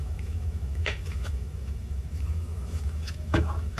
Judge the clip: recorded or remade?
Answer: remade